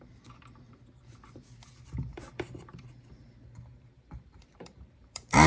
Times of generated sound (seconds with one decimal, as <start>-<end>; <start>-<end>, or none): 2.1-5.5